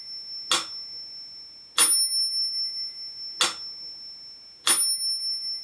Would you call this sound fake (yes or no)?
no